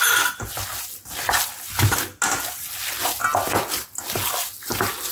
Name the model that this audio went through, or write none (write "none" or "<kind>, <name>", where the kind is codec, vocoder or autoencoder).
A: none